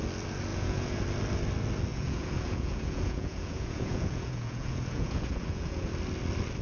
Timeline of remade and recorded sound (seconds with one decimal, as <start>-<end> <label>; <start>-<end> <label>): 0.0-0.5 recorded; 0.5-1.0 remade; 1.0-1.9 recorded; 1.9-5.9 remade; 5.9-6.6 recorded